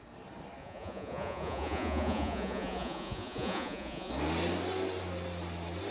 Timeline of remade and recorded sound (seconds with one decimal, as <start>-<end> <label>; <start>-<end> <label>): 0.0-0.6 recorded; 0.6-4.1 remade; 4.1-5.9 recorded